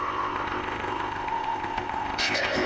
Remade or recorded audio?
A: remade